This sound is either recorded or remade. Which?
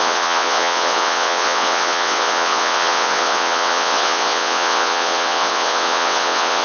remade